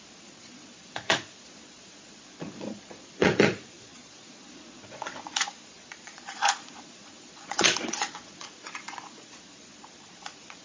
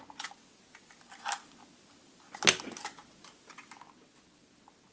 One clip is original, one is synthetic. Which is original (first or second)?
second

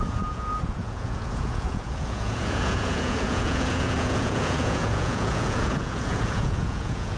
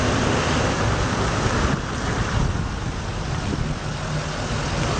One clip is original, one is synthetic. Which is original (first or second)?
second